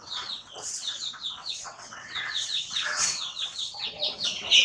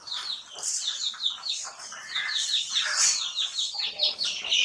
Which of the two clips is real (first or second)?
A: second